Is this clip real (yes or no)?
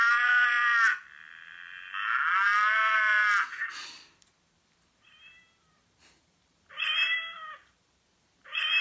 no